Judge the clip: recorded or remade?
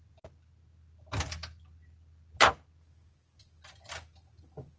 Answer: recorded